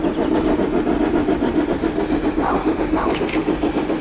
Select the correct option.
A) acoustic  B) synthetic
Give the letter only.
A